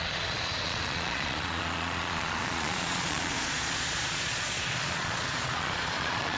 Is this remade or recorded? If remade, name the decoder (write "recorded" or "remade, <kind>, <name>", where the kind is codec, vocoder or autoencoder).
remade, vocoder, Vocos